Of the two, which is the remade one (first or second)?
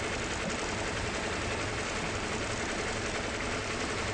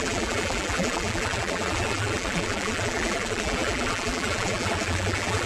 second